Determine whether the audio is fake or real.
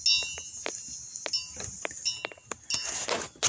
real